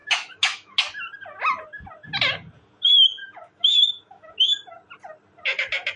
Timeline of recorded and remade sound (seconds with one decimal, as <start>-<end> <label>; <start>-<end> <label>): 0.0-0.8 remade; 0.8-3.2 recorded; 3.2-4.3 remade; 4.3-6.0 recorded